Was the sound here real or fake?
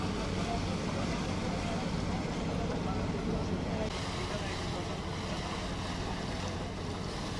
real